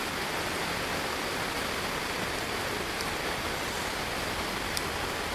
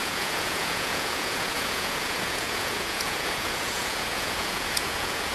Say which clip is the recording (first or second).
first